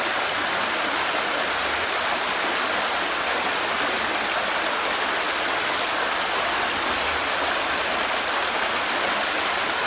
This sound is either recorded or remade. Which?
recorded